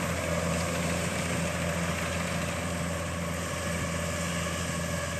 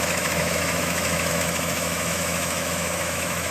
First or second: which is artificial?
second